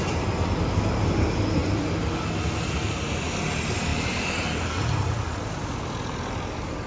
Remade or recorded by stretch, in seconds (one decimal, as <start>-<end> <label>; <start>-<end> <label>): 0.0-3.9 recorded; 3.9-4.7 remade; 4.7-6.9 recorded